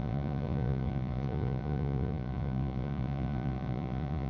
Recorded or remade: remade